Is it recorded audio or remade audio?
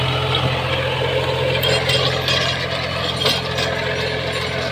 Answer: recorded